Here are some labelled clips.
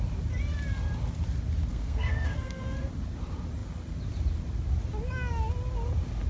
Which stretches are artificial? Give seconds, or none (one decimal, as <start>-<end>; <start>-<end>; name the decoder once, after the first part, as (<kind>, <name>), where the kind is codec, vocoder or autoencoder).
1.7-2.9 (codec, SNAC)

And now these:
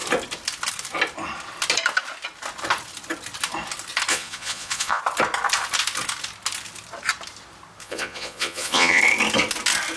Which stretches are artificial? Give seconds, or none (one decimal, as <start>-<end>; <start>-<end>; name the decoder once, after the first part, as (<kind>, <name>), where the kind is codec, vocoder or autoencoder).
4.1-5.0 (vocoder, Vocos); 7.8-9.0

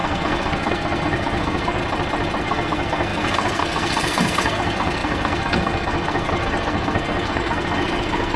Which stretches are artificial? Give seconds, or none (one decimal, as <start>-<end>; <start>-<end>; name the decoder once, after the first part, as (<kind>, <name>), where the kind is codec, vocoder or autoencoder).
0.0-1.8 (codec, SNAC); 2.4-8.4